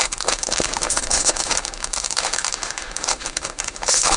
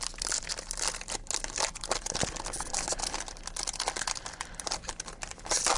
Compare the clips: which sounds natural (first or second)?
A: second